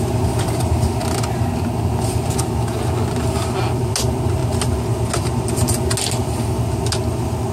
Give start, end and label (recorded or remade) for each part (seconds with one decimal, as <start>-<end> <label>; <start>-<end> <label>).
0.0-7.5 recorded